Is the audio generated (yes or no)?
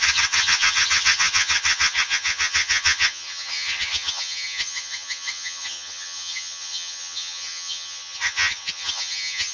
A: yes